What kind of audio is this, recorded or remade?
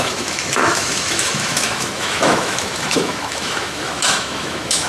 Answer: remade